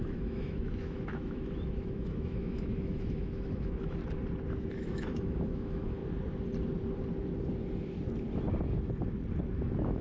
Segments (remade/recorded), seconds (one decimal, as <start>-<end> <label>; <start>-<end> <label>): 0.0-4.0 remade; 4.0-4.6 recorded; 4.6-6.0 remade; 6.0-9.6 recorded; 9.6-10.0 remade